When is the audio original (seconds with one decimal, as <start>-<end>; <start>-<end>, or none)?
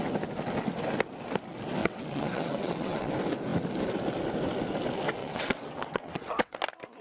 0.0-1.8; 3.1-5.2; 6.6-7.0